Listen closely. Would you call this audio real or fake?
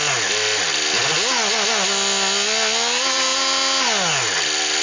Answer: real